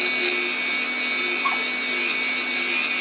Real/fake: real